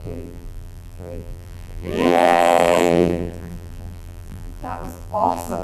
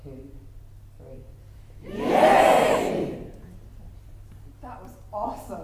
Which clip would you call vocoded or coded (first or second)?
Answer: first